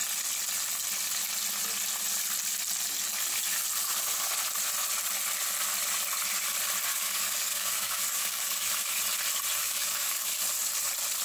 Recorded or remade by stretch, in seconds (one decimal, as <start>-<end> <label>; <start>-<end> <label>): 0.0-6.9 recorded; 6.9-9.0 remade; 9.0-9.6 recorded; 9.6-10.4 remade; 10.4-11.2 recorded